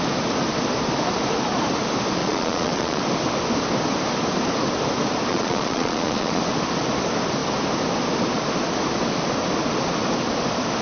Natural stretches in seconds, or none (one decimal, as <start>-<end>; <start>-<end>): 0.0-2.2; 3.0-5.3; 6.4-10.8